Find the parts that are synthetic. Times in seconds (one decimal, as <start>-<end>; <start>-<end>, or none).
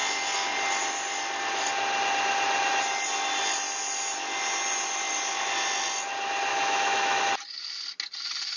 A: 6.5-7.2